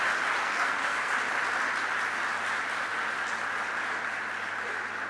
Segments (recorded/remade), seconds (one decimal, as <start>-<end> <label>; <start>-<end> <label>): 0.0-0.4 recorded; 0.4-1.1 remade; 1.1-5.1 recorded